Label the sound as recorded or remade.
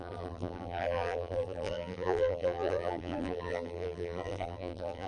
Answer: remade